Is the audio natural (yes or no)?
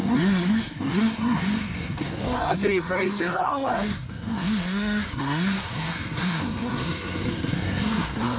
no